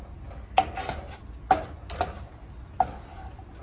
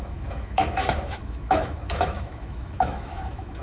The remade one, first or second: second